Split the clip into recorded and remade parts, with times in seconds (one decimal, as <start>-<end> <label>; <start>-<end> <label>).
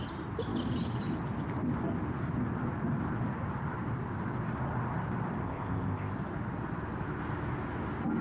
0.0-5.4 recorded; 5.4-6.1 remade; 6.1-8.2 recorded